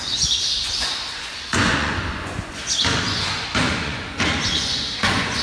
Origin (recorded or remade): remade